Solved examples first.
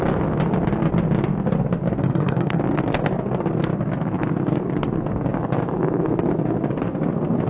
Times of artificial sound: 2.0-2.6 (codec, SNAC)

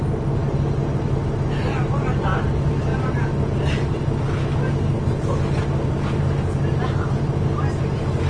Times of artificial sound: none

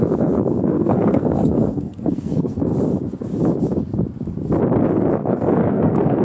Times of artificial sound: 0.0-2.7 (codec, SNAC); 5.1-6.2

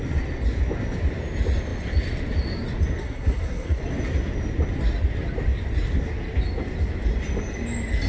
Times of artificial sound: 3.0-3.8 (codec, SNAC)

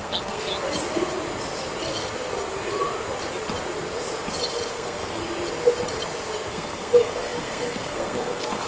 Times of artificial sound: 0.0-0.5 (codec, SNAC); 4.7-5.2; 6.5-8.7

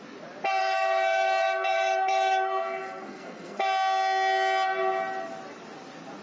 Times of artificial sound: 0.6-3.6 (codec, SNAC)

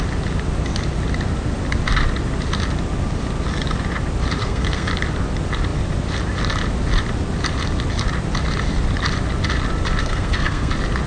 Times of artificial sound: 4.4-4.9 (codec, SNAC); 10.0-10.7

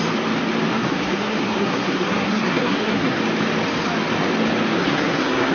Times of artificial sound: 0.7-3.2 (codec, SNAC); 4.8-5.5